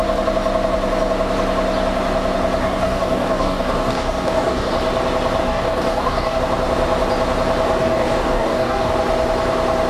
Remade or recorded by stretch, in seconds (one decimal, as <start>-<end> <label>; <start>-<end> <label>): 0.0-2.6 recorded; 2.6-4.7 remade; 4.7-5.4 recorded; 5.4-6.4 remade; 6.4-7.8 recorded; 7.8-8.9 remade; 8.9-9.9 recorded